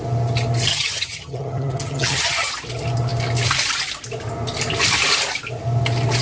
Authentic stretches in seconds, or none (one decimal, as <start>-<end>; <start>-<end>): 0.0-0.7; 2.5-6.2